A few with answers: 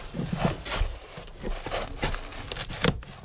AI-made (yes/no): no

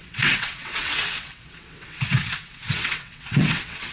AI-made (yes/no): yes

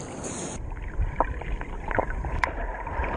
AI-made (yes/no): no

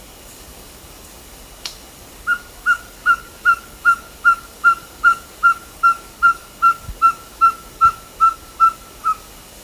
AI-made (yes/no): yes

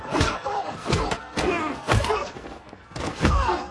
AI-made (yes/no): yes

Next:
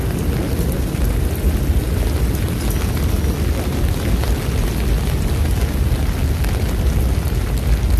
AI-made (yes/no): no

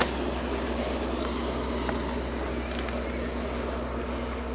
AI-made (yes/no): no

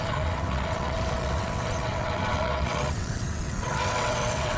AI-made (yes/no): yes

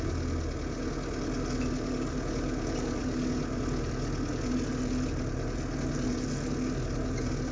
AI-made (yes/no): no